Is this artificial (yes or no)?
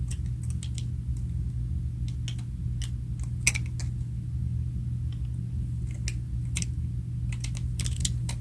no